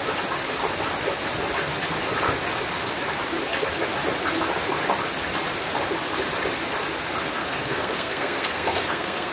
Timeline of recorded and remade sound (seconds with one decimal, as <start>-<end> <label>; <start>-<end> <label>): 0.0-7.4 recorded; 7.4-9.3 remade

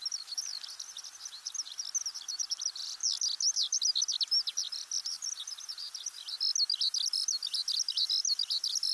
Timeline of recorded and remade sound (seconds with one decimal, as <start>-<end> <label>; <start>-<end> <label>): 0.0-8.9 recorded

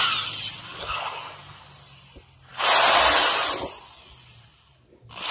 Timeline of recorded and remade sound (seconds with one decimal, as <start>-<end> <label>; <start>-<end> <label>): 0.0-5.3 recorded

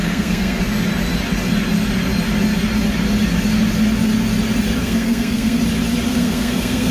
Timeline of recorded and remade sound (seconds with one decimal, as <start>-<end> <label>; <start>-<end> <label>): 0.0-0.6 remade; 0.6-4.8 recorded; 4.8-5.6 remade; 5.6-6.1 recorded; 6.1-6.9 remade

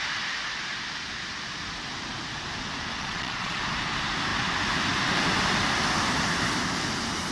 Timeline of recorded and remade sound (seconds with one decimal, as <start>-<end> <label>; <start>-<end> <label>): 0.0-2.9 recorded; 2.9-3.6 remade; 3.6-7.3 recorded

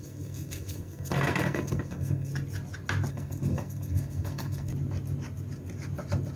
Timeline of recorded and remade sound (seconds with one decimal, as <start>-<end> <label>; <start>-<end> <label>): 0.0-2.3 remade; 2.3-3.1 recorded; 3.1-4.7 remade; 4.7-6.4 recorded